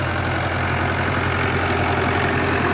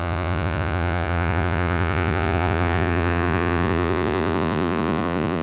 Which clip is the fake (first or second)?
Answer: second